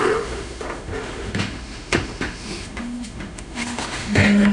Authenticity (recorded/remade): remade